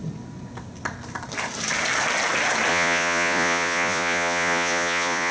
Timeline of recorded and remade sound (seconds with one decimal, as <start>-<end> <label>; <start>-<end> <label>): 0.0-2.7 recorded; 2.7-5.3 remade